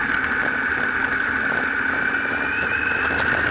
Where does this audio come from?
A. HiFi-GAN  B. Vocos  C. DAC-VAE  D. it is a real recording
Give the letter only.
D